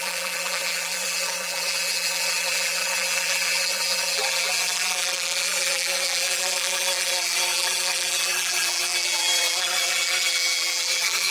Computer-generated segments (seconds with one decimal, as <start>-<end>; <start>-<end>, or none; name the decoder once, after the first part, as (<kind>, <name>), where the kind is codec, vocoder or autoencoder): 0.0-11.3 (vocoder, BigVGAN v2)